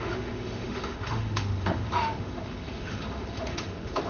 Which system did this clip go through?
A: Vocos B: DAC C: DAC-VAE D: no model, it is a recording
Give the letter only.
C